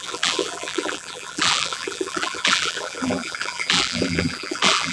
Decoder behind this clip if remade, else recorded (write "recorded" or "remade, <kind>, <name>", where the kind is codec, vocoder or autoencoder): remade, vocoder, BigVGAN v2